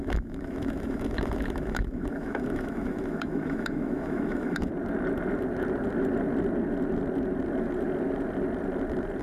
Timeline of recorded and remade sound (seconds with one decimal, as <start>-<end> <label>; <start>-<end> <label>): 0.0-4.7 remade; 4.7-9.2 recorded